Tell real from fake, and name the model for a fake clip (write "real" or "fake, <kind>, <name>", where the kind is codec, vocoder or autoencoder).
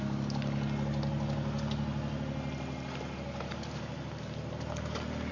real